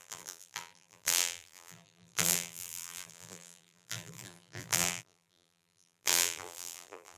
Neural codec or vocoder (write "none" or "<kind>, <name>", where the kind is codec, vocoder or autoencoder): vocoder, BigVGAN v2